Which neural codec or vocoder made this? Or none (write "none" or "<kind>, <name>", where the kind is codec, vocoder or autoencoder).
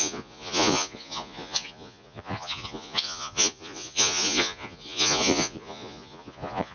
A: vocoder, Vocos